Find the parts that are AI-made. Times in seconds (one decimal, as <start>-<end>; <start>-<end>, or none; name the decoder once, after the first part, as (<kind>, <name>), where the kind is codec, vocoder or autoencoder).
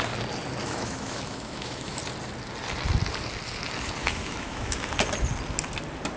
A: 0.6-2.0 (autoencoder, DAC-VAE); 4.0-4.9